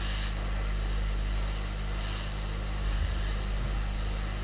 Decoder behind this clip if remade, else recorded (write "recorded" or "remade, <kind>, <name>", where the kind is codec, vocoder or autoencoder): recorded